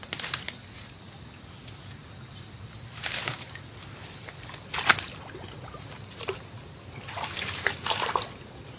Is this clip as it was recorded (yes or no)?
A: yes